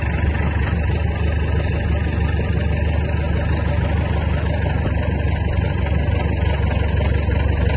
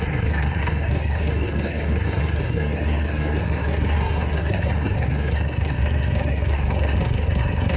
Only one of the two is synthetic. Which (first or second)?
second